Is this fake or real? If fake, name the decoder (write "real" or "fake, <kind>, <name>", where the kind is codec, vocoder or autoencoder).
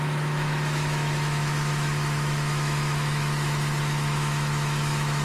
fake, autoencoder, DAC-VAE